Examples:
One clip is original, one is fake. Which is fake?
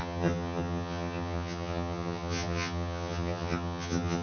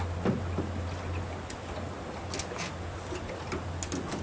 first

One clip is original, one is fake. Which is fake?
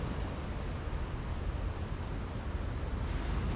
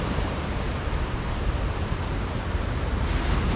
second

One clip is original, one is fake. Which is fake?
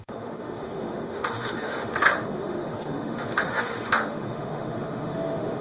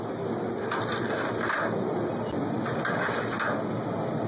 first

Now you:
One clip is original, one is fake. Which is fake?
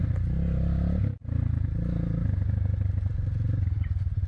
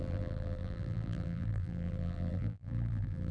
second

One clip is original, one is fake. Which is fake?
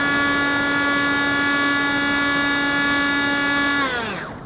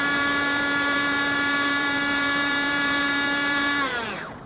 second